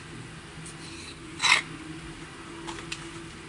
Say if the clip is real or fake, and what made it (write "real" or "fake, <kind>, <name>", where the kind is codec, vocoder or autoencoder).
real